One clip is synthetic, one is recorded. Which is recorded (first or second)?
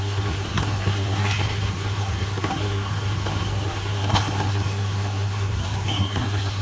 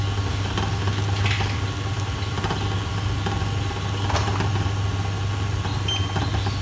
second